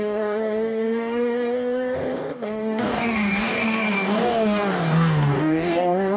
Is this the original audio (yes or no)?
no